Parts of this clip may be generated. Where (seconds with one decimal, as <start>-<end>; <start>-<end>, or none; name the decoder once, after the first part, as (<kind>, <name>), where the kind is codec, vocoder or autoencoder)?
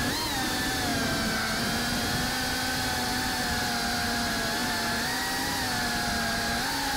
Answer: none